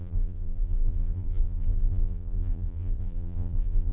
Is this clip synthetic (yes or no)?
yes